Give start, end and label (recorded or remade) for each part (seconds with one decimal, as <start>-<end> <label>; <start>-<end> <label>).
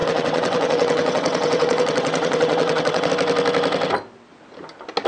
0.0-3.1 remade; 3.1-5.1 recorded